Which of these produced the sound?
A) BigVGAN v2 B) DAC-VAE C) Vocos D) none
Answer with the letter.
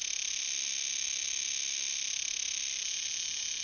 D